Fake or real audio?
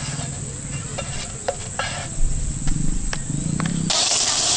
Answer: real